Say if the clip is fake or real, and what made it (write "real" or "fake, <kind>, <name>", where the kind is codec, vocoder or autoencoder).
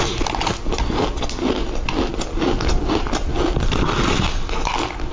real